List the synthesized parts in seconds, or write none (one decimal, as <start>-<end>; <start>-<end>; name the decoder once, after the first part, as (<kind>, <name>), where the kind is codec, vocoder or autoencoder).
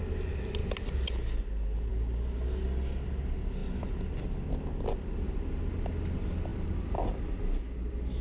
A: none